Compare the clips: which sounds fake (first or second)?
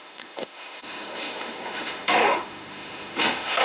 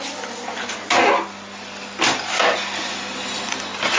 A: first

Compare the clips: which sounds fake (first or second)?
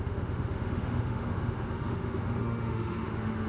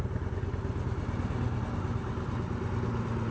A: first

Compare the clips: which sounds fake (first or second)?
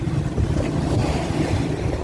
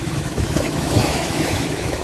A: second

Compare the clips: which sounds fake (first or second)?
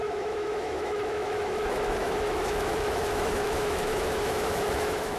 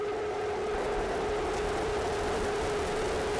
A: first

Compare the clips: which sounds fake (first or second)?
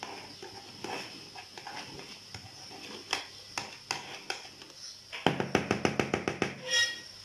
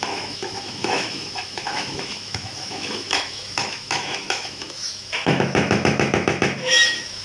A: second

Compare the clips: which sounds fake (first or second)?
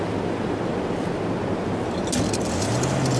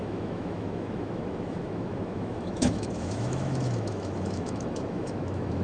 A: second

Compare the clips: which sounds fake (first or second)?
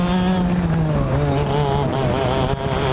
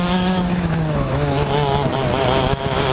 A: second